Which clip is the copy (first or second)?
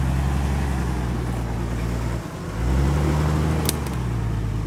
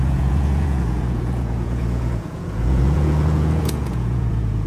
second